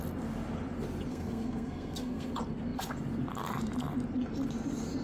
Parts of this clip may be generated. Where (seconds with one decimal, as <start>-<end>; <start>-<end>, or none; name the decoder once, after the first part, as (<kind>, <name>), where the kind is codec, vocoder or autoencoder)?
1.1-2.3 (codec, SNAC)